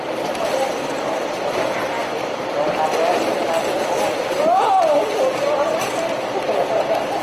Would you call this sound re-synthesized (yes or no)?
no